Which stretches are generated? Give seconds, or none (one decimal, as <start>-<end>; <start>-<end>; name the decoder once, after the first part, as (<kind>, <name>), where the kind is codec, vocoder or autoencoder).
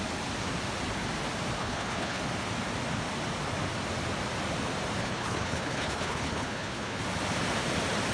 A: 1.6-2.2 (codec, HILCodec); 5.0-7.0